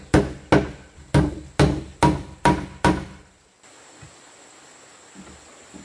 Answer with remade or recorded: recorded